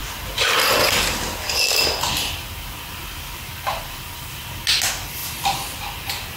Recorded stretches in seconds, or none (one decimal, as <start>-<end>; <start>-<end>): 0.0-6.4